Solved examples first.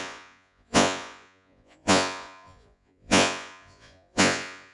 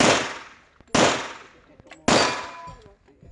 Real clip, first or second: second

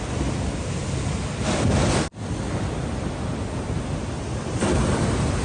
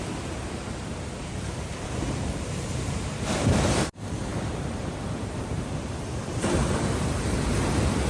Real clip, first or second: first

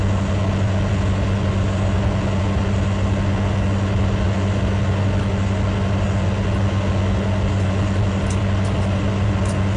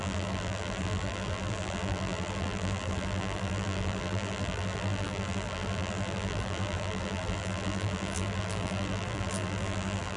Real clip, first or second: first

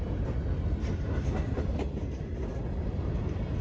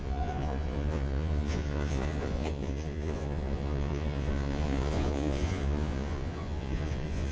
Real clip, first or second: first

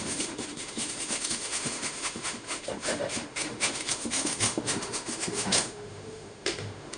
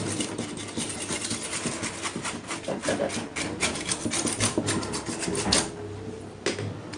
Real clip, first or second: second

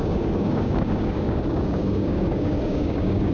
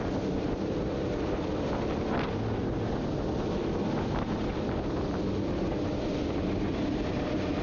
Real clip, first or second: second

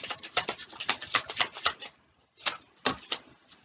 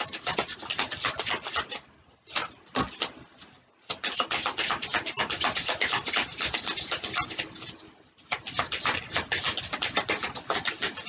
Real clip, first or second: second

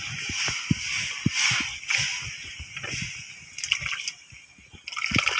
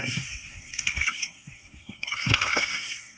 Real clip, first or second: first